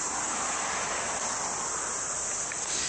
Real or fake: real